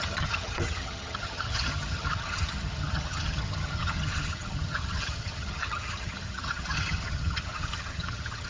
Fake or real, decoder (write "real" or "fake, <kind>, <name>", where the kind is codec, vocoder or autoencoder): fake, vocoder, HiFi-GAN